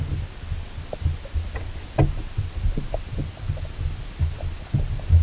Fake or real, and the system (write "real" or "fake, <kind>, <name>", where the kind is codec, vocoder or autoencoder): real